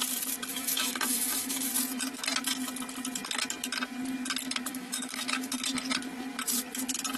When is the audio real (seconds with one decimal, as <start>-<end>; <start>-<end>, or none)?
0.0-0.5; 1.7-4.7; 5.5-7.2